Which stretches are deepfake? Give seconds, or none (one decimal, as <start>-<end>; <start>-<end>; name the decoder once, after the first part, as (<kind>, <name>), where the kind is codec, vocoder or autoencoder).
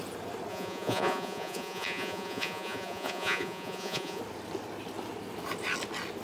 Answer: 0.5-4.2 (vocoder, Vocos)